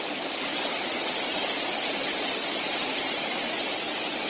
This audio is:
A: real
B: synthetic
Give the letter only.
A